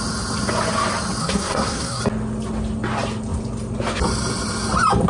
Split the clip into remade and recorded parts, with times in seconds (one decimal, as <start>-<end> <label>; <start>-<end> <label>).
0.0-1.2 recorded; 1.2-2.0 remade; 2.0-5.1 recorded